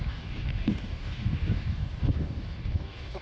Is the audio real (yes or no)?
no